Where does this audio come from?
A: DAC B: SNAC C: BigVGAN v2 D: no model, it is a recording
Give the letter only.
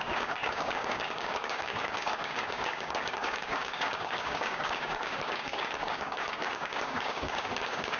A